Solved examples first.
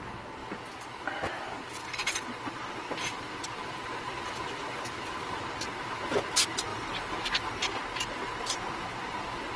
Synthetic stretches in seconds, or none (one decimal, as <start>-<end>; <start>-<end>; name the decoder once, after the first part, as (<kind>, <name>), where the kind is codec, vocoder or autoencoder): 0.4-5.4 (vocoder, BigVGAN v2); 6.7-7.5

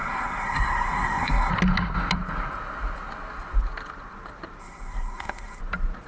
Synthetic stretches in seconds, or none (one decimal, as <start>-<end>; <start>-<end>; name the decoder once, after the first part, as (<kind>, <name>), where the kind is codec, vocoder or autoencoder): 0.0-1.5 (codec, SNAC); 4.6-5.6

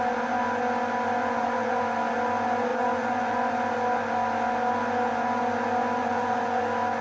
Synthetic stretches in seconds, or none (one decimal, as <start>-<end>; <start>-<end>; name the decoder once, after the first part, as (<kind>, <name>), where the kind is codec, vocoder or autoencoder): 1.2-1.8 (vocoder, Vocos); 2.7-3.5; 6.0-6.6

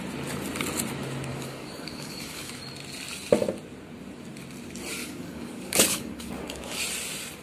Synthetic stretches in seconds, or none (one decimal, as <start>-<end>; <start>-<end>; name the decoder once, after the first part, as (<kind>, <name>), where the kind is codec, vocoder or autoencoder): 1.3-2.5 (codec, DAC); 5.0-6.8